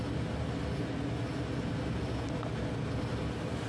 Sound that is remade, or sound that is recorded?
recorded